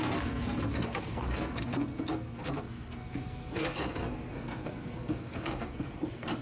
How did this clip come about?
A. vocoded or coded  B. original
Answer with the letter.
A